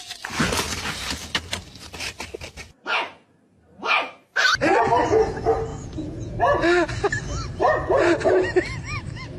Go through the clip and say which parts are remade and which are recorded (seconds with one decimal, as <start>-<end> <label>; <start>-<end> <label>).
0.0-5.7 recorded; 5.7-6.4 remade; 6.4-9.4 recorded

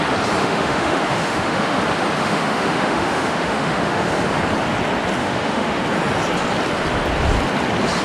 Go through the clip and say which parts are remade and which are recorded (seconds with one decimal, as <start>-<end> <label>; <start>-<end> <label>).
0.0-0.4 recorded; 0.4-1.8 remade; 1.8-2.2 recorded; 2.2-4.1 remade; 4.1-5.2 recorded; 5.2-5.8 remade; 5.8-8.0 recorded

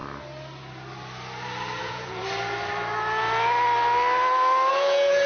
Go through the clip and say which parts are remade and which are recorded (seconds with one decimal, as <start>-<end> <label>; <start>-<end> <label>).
0.0-1.8 recorded; 1.8-2.2 remade; 2.2-4.7 recorded; 4.7-5.3 remade